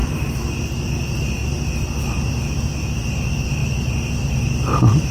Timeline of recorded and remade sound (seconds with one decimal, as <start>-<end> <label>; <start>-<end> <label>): 0.0-0.8 remade; 0.8-3.6 recorded; 3.6-4.5 remade; 4.5-5.1 recorded